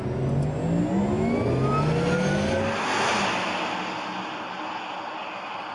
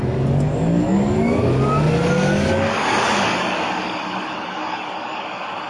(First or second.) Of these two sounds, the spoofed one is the second